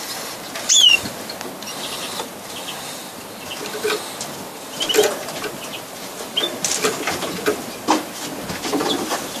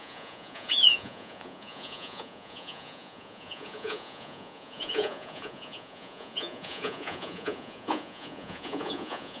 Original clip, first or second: first